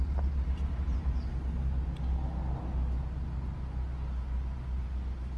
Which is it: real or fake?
real